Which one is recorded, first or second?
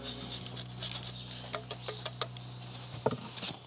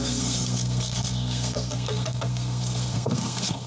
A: first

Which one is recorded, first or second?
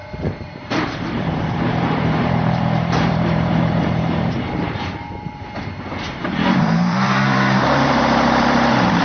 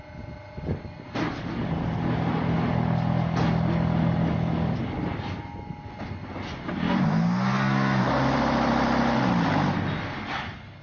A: second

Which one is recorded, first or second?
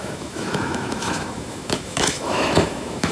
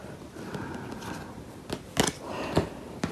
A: second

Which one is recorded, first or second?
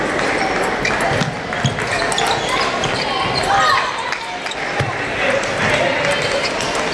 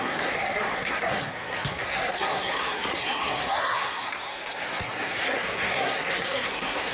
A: first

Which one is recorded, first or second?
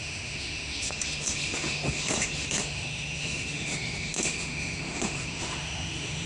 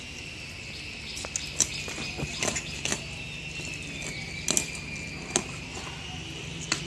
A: second